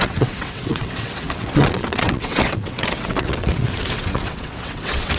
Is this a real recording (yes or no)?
no